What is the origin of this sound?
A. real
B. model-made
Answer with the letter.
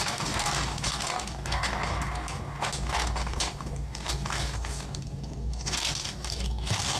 B